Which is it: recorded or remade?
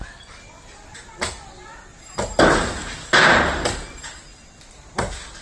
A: recorded